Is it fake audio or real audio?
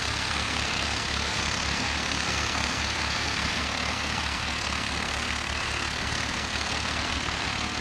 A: fake